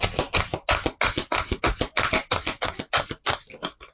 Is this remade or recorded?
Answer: recorded